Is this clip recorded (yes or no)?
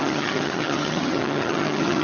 no